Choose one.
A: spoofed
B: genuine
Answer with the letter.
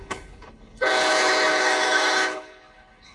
A